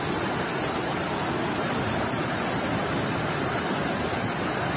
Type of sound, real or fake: real